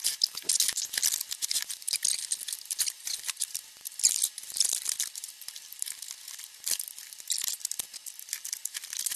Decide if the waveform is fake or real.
real